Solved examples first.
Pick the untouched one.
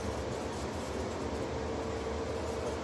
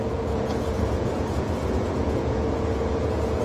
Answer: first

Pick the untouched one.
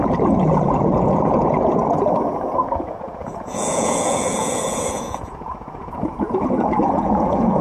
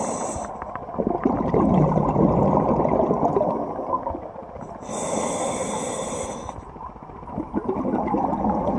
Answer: second